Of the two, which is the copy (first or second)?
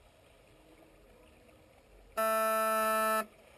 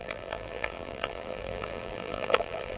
second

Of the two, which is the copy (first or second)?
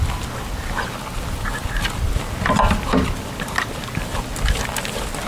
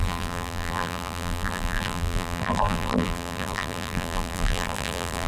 second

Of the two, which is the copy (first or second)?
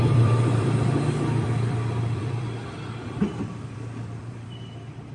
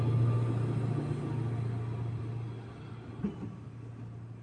first